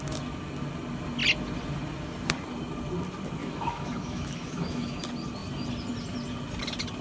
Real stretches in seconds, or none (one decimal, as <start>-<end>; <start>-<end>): 0.0-3.4; 5.0-7.0